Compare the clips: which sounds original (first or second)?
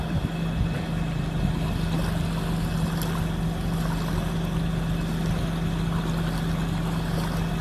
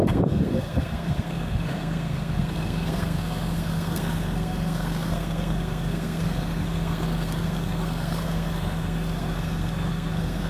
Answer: first